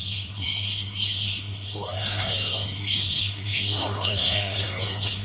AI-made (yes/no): yes